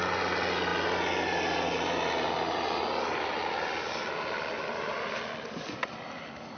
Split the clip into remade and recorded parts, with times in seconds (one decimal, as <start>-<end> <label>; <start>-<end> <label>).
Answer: 0.0-6.6 recorded